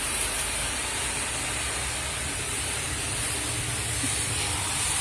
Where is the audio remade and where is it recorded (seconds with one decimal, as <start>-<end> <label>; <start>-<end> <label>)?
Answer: 0.0-5.0 recorded